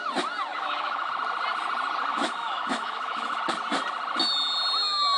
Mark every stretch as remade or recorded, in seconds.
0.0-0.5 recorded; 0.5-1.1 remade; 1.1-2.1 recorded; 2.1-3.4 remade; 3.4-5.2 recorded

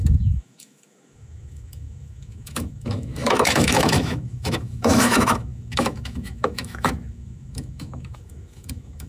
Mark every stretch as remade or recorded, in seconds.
0.0-9.1 remade

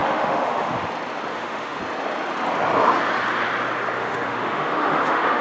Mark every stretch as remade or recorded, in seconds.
0.0-0.9 remade; 0.9-1.3 recorded; 1.3-1.8 remade; 1.8-4.0 recorded; 4.0-5.4 remade